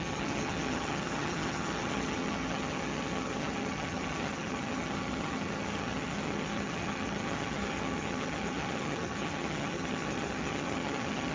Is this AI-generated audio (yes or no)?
yes